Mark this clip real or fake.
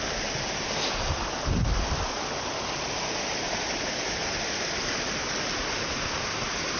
real